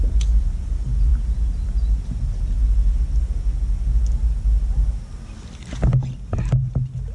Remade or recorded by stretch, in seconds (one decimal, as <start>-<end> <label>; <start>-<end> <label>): 0.0-7.1 recorded